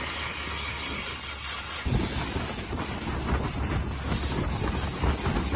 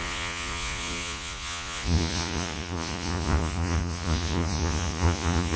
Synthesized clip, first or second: second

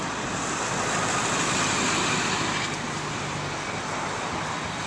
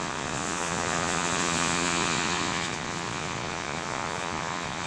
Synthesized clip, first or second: second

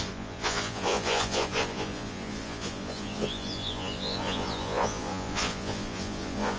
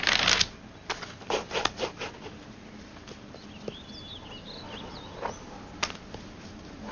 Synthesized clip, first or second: first